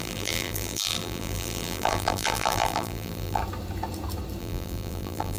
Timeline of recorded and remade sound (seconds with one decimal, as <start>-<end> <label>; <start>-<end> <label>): 0.0-3.4 remade; 3.4-4.4 recorded; 4.4-5.4 remade